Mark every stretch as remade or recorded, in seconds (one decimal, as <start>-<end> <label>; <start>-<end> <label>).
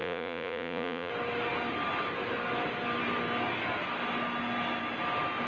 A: 0.0-1.1 remade; 1.1-5.5 recorded